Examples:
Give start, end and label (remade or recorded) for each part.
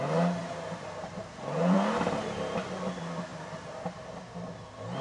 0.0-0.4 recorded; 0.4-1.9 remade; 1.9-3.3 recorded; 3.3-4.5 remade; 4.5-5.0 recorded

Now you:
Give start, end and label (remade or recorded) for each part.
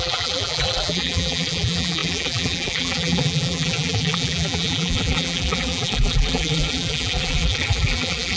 0.0-8.4 remade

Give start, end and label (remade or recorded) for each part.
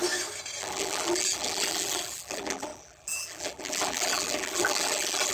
0.0-0.6 recorded; 0.6-5.3 remade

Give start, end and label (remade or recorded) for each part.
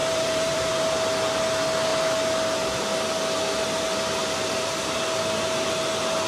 0.0-0.8 remade; 0.8-4.2 recorded; 4.2-4.8 remade; 4.8-6.3 recorded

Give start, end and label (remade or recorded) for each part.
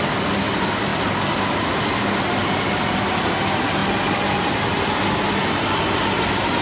0.0-6.6 recorded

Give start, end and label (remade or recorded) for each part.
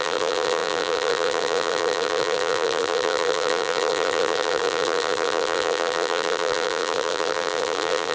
0.0-8.1 remade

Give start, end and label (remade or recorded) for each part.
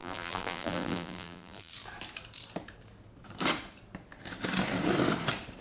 0.0-1.7 remade; 1.7-5.6 recorded